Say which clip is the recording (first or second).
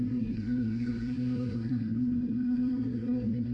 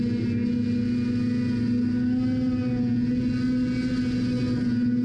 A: second